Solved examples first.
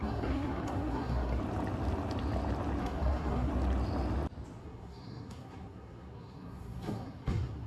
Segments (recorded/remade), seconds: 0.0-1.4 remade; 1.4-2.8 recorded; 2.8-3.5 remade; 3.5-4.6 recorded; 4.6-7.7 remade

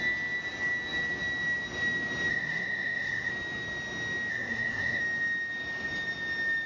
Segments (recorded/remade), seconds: 0.0-2.3 recorded; 2.3-3.3 remade; 3.3-4.3 recorded; 4.3-5.0 remade; 5.0-6.7 recorded

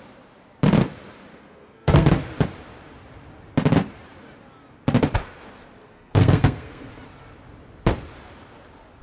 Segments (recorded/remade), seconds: 0.0-1.3 recorded; 1.3-2.1 remade; 2.1-5.8 recorded; 5.8-6.9 remade; 6.9-9.0 recorded

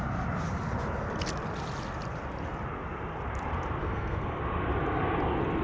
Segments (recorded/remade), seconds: 0.0-3.8 recorded; 3.8-4.4 remade; 4.4-5.6 recorded

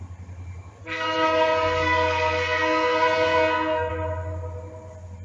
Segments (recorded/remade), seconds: 0.0-0.8 recorded; 0.8-3.9 remade; 3.9-5.2 recorded